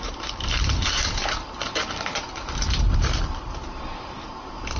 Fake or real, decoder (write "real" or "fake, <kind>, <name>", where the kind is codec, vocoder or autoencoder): fake, vocoder, BigVGAN v2